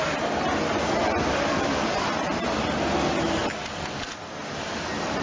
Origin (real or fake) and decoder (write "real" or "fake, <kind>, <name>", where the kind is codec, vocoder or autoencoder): real